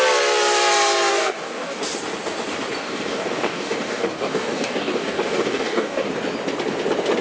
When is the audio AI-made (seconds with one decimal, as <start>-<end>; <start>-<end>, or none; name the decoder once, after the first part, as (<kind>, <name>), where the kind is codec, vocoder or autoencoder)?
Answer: 1.1-1.8 (codec, DAC); 2.8-6.1